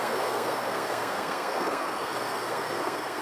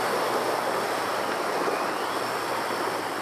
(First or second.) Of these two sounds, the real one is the second